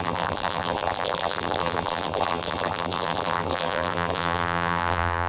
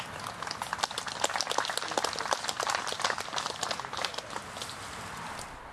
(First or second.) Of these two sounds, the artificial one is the first